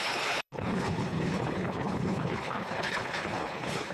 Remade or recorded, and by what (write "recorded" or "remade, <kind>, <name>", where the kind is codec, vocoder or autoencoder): remade, codec, HILCodec